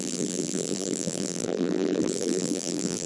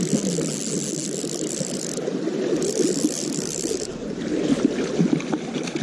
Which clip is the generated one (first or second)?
first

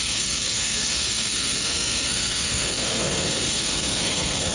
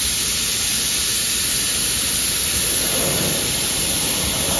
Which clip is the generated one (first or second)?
first